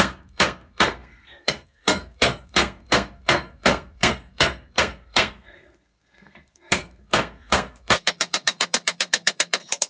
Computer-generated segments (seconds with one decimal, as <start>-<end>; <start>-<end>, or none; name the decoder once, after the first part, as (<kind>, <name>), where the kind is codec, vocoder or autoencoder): 0.0-9.9 (codec, SNAC)